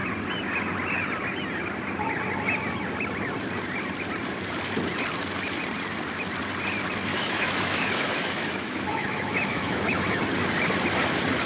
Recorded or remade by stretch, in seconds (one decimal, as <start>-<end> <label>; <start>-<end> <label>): 0.0-7.1 recorded; 7.1-10.2 remade; 10.2-11.5 recorded